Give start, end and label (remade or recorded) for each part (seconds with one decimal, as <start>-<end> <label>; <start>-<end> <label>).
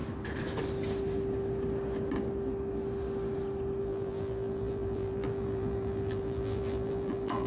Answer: 0.0-3.8 recorded; 3.8-7.5 remade